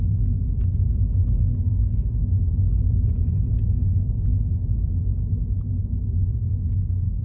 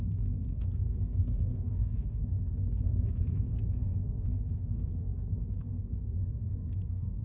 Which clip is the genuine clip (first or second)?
first